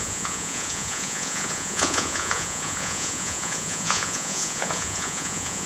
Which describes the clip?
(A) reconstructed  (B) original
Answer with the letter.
A